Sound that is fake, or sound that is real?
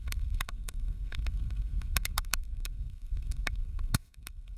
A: fake